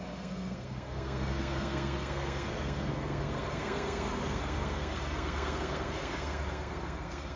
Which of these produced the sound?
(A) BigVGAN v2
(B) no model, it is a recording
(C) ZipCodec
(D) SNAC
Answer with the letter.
D